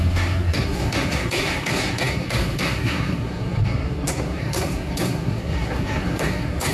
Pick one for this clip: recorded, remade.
remade